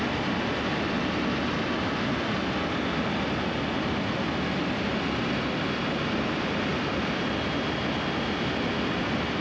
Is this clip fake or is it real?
real